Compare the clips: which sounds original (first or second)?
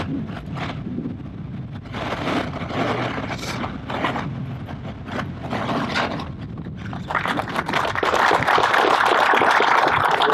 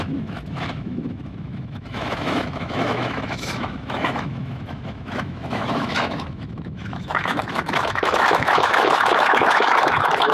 first